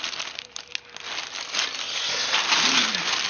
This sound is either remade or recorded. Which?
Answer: recorded